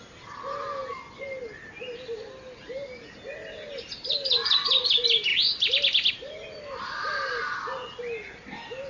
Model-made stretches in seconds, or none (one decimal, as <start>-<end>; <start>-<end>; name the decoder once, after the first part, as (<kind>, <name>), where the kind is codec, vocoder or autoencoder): none

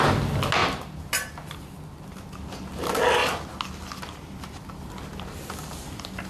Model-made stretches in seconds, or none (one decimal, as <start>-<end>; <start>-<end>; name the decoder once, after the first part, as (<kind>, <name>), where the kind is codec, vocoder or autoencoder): none